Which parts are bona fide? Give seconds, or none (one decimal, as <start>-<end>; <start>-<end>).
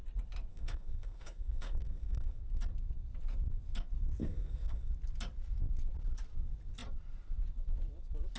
0.0-0.5; 2.4-4.2; 4.9-8.4